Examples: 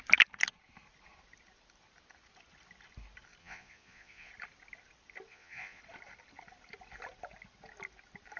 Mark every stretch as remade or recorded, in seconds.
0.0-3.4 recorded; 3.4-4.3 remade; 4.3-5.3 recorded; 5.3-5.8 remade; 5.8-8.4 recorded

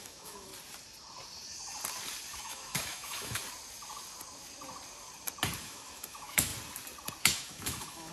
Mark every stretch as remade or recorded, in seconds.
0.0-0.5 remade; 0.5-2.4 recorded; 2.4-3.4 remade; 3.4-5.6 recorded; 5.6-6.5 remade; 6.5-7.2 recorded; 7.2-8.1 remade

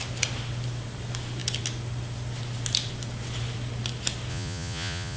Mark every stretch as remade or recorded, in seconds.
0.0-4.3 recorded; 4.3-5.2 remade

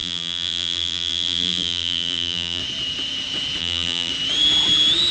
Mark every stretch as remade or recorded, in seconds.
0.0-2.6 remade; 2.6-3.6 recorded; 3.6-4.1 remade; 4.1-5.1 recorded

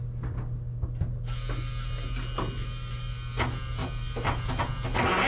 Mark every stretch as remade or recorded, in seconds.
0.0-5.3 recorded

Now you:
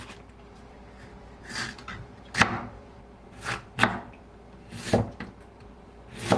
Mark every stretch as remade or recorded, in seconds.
0.0-6.4 remade

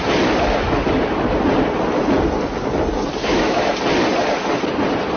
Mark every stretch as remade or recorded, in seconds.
0.0-3.2 recorded; 3.2-3.7 remade; 3.7-5.2 recorded